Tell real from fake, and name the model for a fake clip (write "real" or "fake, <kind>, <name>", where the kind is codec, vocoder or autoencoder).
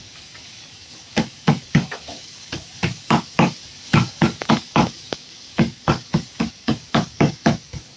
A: fake, codec, DAC